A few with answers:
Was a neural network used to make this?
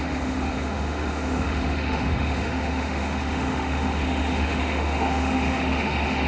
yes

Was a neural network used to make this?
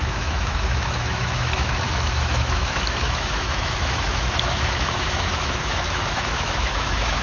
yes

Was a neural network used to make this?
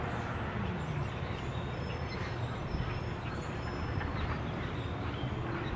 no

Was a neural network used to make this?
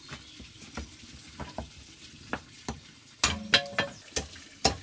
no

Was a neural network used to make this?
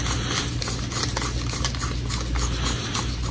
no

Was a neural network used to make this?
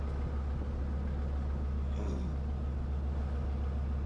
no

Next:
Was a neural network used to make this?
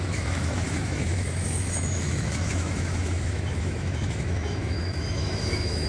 yes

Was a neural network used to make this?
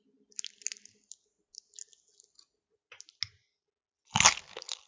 no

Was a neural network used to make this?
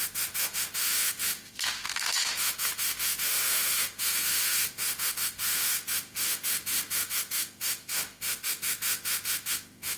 yes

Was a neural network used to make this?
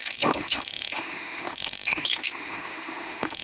yes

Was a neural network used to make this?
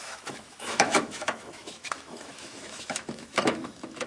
yes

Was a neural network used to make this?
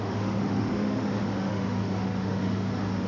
yes